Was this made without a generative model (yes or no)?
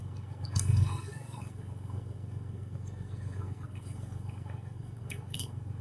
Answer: no